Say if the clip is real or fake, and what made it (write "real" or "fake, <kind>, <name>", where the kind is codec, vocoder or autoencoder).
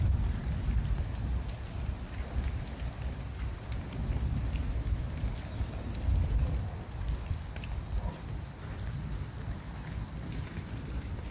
real